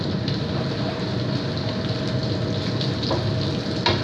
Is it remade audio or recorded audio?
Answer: recorded